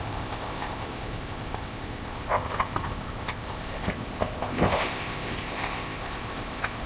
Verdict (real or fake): fake